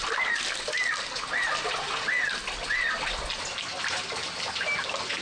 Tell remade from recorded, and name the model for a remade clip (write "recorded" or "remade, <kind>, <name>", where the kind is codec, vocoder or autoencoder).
recorded